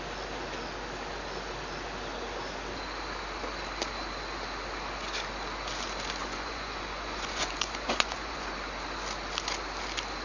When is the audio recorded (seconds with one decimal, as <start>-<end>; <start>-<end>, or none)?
0.0-6.2; 8.5-10.2